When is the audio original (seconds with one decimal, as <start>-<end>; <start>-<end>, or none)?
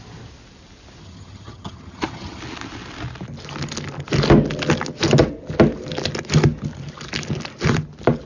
0.0-1.0; 2.4-8.3